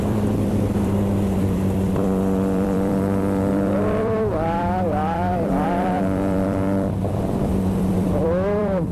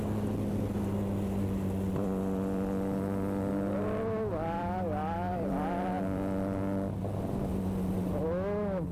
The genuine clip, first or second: second